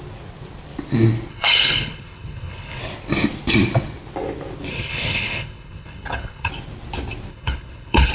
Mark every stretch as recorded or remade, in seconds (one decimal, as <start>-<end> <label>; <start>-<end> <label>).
0.0-1.3 recorded; 1.3-2.8 remade; 2.8-4.7 recorded; 4.7-6.5 remade; 6.5-7.3 recorded; 7.3-8.1 remade